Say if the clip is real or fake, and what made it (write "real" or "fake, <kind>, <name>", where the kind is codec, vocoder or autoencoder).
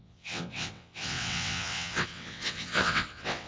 fake, vocoder, WaveNeXt